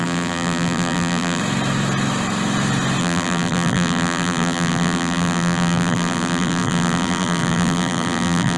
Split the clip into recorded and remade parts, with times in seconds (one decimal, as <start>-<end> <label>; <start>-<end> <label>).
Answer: 0.0-1.4 remade; 1.4-3.0 recorded; 3.0-8.6 remade